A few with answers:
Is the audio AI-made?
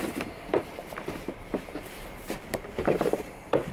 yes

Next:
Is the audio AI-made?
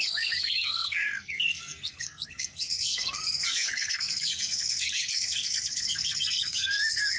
yes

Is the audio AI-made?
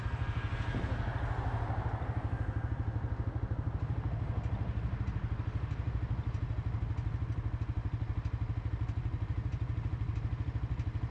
no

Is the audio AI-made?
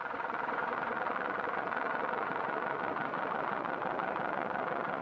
yes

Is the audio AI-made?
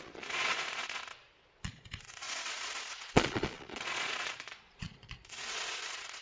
yes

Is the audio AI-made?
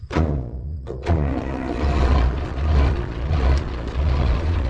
yes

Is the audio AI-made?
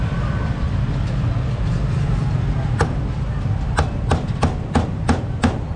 no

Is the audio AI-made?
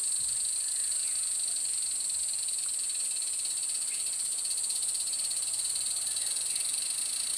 no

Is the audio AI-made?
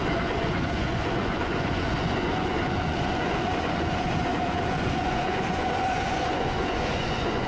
yes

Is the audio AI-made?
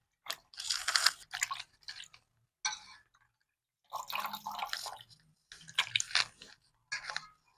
no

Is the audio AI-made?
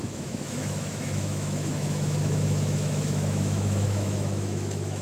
yes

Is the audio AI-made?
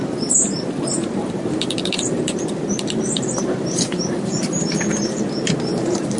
yes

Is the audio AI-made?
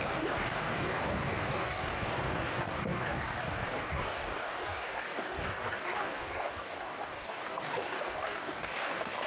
yes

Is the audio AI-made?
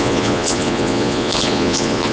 yes